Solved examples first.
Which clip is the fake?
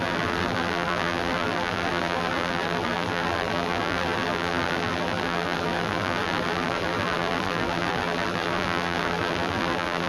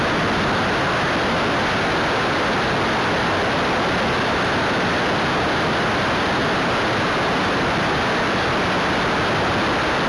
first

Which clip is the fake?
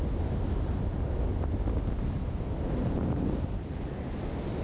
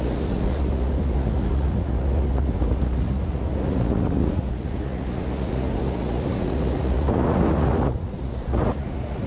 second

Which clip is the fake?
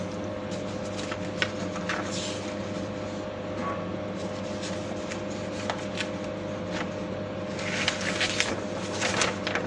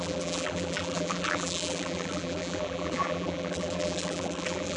second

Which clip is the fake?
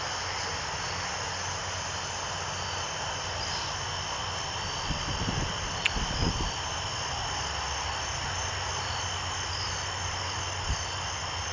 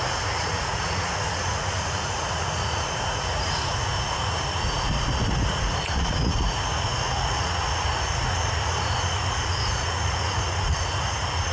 second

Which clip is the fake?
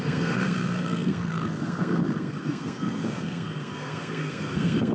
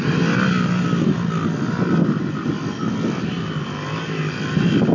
first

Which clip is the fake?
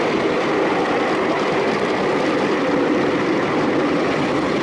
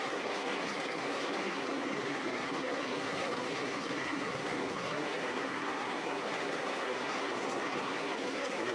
second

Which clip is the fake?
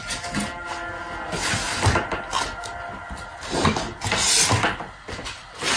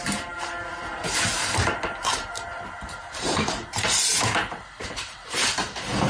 second